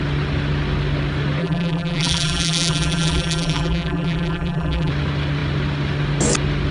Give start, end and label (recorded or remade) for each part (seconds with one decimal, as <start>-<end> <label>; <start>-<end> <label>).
0.0-1.4 recorded; 1.4-4.9 remade; 4.9-6.7 recorded